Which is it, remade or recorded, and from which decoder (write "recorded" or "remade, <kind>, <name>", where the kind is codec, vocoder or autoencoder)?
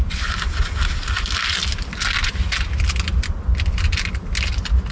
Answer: recorded